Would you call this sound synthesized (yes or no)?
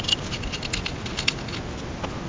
no